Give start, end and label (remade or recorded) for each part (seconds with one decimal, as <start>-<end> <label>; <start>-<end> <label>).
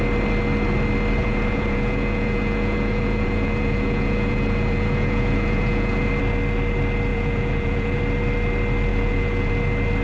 0.0-1.2 recorded; 1.2-6.1 remade; 6.1-7.1 recorded; 7.1-8.0 remade; 8.0-8.9 recorded; 8.9-9.5 remade; 9.5-10.0 recorded